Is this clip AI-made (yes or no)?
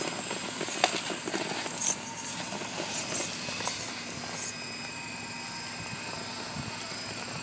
no